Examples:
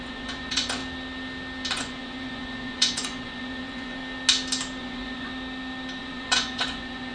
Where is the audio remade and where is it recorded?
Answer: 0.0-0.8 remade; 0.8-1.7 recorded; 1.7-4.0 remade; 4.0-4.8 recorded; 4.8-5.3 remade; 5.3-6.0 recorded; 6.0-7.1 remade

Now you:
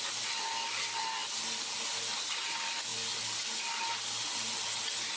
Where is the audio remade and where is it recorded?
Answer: 0.0-5.2 recorded

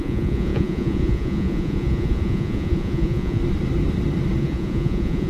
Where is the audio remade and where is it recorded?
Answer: 0.0-3.4 remade; 3.4-4.4 recorded; 4.4-5.3 remade

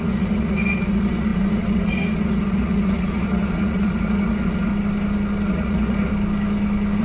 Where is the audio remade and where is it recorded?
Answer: 0.0-4.7 remade; 4.7-5.5 recorded; 5.5-6.1 remade; 6.1-7.0 recorded

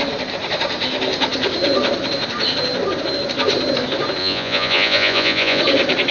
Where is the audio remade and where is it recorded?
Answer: 0.0-4.2 recorded; 4.2-5.6 remade; 5.6-6.1 recorded